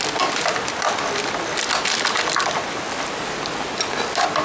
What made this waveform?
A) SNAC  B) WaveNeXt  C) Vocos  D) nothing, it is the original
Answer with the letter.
D